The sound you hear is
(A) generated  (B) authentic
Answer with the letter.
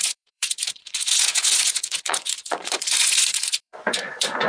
A